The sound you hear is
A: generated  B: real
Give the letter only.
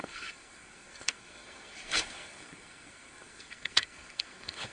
A